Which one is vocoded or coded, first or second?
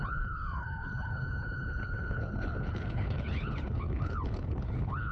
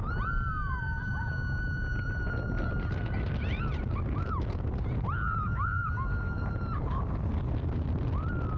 first